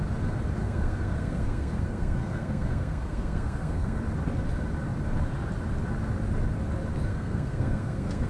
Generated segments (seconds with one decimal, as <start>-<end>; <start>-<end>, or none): 0.6-4.0; 7.1-8.3